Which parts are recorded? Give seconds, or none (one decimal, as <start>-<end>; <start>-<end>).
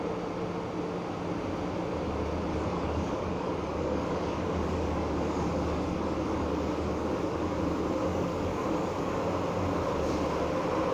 0.0-2.5; 7.6-8.1; 9.2-10.9